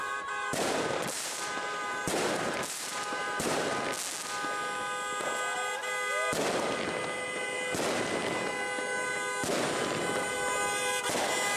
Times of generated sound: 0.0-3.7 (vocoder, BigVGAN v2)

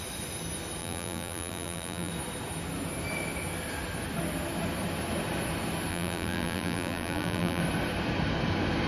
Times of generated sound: 0.8-2.1 (vocoder, BigVGAN v2); 5.9-7.6

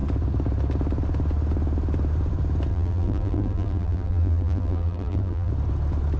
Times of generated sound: 2.7-5.5 (vocoder, BigVGAN v2)

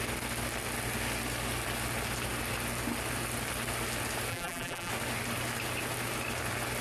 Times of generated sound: 4.3-4.9 (vocoder, BigVGAN v2)

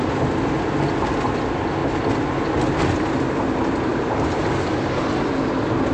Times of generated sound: 1.8-2.5 (vocoder, BigVGAN v2); 3.9-5.0